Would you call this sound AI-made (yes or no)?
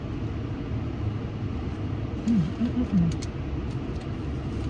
no